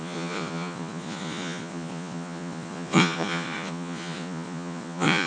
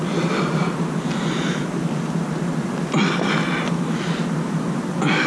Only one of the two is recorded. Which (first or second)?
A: second